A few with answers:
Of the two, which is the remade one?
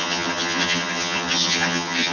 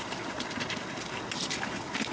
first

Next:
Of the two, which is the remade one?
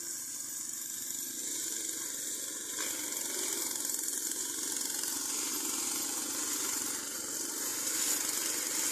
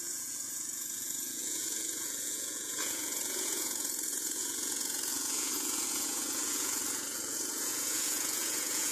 second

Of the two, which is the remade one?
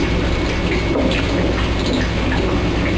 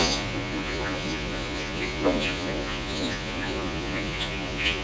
second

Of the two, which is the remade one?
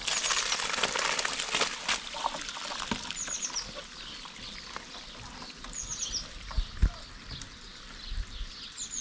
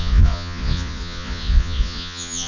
second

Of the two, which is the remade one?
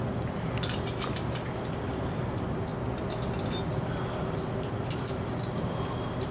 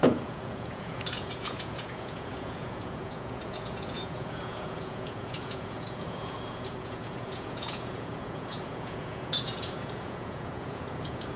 second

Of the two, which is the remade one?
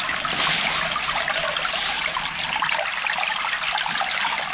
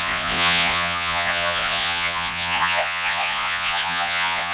second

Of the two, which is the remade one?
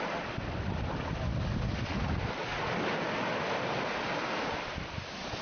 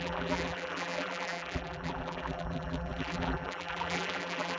second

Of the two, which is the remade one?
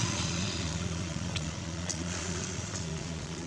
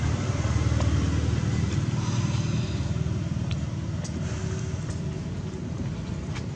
first